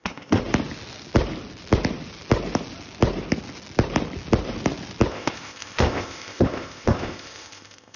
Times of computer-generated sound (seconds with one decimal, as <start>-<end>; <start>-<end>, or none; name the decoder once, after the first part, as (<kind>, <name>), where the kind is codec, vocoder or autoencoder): 0.0-0.4 (codec, ZipCodec); 5.1-8.0